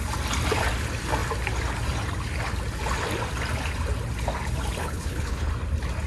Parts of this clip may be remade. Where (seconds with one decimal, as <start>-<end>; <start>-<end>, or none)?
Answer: 4.8-5.5